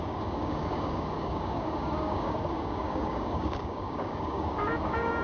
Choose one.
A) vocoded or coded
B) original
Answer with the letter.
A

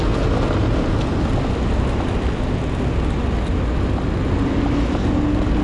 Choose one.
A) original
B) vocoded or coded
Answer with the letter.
A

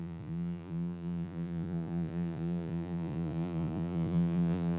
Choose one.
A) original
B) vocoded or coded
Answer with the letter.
B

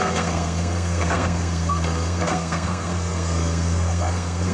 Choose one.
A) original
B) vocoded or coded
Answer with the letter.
B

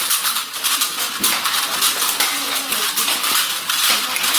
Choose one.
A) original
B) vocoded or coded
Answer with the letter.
A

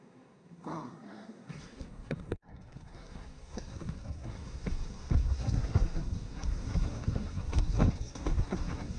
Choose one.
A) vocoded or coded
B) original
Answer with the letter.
A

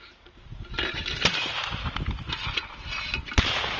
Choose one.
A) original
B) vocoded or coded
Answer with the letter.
A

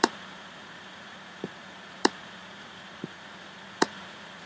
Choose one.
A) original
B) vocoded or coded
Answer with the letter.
B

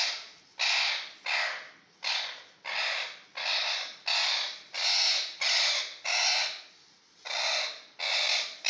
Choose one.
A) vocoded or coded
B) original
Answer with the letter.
B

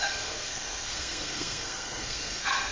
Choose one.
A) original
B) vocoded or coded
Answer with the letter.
B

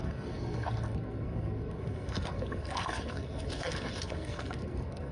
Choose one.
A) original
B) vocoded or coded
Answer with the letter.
B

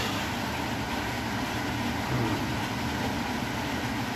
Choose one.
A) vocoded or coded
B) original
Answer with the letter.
B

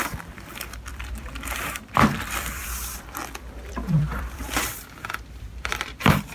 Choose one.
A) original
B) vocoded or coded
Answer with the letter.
B